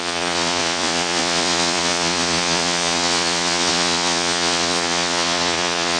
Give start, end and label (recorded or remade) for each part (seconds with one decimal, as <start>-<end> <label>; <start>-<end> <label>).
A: 0.0-6.0 remade